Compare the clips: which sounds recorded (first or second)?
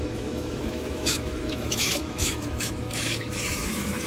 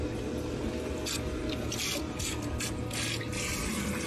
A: second